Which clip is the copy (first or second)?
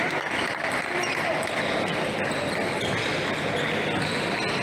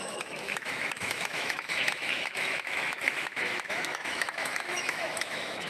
second